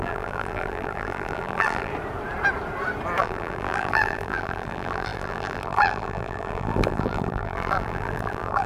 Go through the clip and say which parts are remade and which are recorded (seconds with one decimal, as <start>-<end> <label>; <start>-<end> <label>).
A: 0.0-1.9 remade; 1.9-3.2 recorded; 3.2-8.7 remade